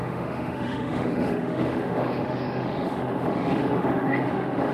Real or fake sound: fake